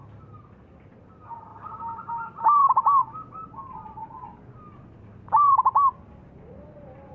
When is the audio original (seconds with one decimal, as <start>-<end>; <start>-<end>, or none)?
0.0-1.5; 2.1-7.1

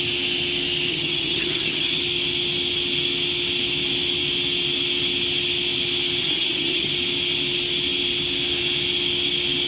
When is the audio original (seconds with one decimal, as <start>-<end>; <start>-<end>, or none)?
0.0-0.9; 2.0-6.2; 6.9-9.7